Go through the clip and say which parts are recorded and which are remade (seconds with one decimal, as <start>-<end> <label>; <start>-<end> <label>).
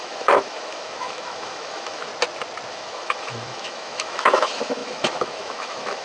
0.0-2.1 remade; 2.1-2.7 recorded; 2.7-6.0 remade